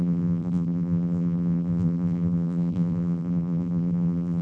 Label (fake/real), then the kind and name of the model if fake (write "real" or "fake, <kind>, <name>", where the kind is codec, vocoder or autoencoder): fake, vocoder, BigVGAN v2